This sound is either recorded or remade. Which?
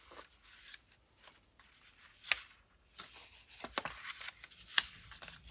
recorded